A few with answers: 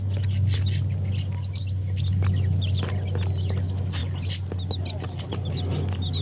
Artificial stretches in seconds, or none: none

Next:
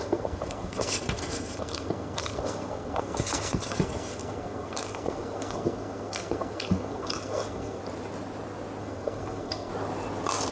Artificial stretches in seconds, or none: 0.0-7.8 (codec, SNAC); 8.8-9.7

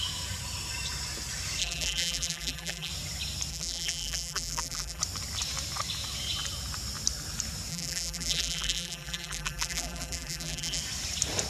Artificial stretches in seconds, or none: 1.6-2.9 (vocoder, BigVGAN v2); 3.5-5.0; 7.7-10.8

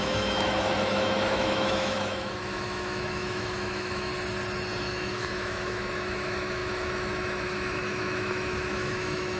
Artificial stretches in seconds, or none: 0.0-4.1 (autoencoder, DAC-VAE); 4.8-9.4